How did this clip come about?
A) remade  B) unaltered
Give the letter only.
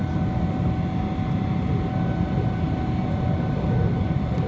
B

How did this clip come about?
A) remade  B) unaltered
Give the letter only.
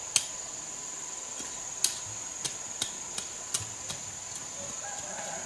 B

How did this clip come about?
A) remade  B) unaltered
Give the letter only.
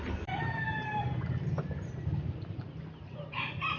B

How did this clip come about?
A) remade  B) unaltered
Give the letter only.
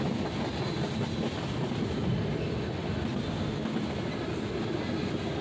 B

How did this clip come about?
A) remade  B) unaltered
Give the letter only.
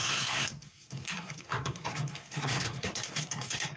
A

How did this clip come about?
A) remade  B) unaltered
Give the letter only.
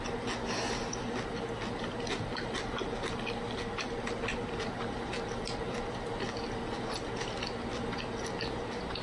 B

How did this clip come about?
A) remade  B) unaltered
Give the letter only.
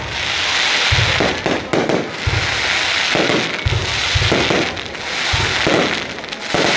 B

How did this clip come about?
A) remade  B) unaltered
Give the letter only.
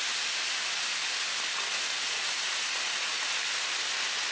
B